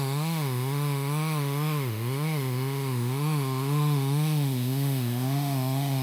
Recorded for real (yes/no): no